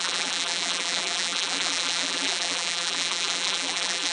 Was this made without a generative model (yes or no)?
no